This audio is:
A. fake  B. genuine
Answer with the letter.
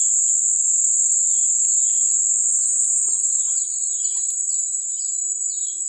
B